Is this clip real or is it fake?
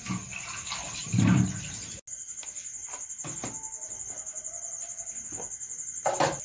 real